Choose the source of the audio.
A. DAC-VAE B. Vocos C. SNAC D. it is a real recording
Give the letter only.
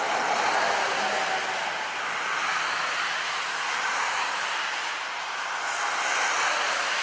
D